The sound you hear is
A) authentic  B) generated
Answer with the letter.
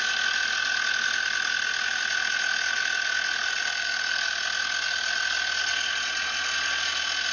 A